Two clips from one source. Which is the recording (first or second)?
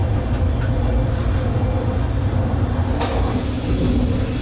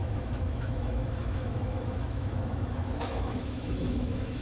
first